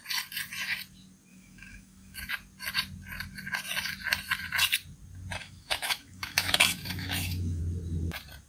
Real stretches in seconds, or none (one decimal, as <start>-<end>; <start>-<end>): 0.0-1.3; 2.3-5.4; 7.6-8.5